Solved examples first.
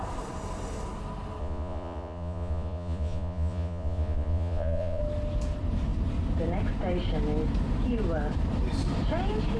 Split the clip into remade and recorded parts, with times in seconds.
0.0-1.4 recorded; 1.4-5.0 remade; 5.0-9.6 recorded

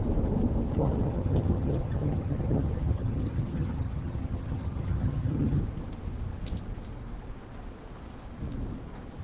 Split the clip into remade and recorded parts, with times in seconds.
0.0-0.7 recorded; 0.7-5.6 remade; 5.6-9.2 recorded

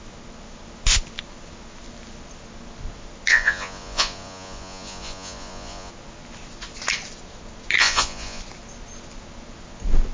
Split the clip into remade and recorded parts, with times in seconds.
0.0-3.3 recorded; 3.3-5.9 remade; 5.9-7.8 recorded; 7.8-8.4 remade; 8.4-10.1 recorded

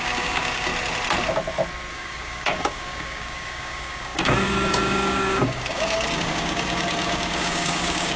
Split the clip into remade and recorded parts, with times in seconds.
0.0-0.7 remade; 0.7-1.9 recorded; 1.9-8.2 remade